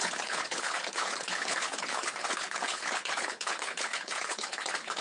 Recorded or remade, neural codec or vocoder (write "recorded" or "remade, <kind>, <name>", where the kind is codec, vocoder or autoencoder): remade, codec, HILCodec